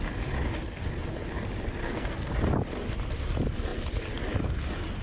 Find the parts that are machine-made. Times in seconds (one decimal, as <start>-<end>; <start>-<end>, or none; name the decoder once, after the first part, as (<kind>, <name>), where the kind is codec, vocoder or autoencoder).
1.8-2.3 (codec, SNAC)